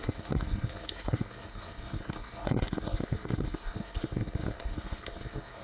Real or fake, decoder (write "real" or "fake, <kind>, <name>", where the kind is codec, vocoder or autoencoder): fake, codec, SNAC